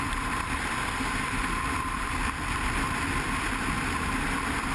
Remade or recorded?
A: remade